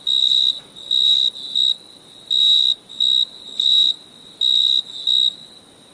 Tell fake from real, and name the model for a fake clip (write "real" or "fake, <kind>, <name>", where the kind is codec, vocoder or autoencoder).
real